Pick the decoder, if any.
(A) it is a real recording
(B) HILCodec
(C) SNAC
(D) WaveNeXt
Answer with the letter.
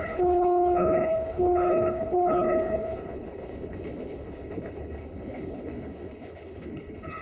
B